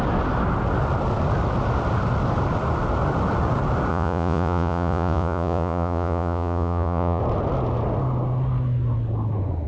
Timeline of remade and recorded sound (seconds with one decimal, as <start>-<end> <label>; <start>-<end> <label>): 0.0-3.9 recorded; 3.9-7.2 remade; 7.2-9.7 recorded